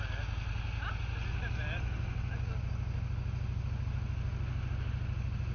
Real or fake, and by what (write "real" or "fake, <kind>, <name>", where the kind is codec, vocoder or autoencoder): real